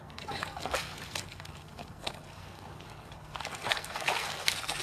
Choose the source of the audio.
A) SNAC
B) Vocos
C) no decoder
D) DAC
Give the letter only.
A